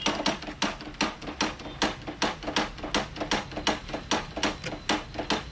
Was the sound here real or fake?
real